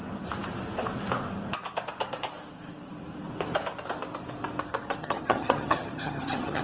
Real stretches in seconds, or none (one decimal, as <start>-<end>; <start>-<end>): 0.0-5.0